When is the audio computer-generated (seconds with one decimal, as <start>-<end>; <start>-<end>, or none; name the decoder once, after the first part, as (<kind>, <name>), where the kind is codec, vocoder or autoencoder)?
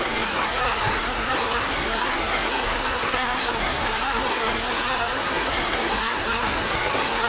0.0-7.3 (codec, SNAC)